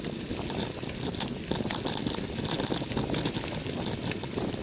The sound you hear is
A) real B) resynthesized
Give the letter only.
A